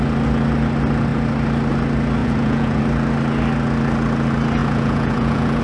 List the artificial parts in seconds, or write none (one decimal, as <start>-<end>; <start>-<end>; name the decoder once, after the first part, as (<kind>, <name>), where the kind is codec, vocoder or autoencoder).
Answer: 2.2-2.8 (vocoder, Vocos); 4.6-5.6